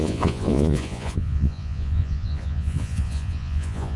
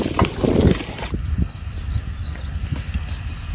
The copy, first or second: first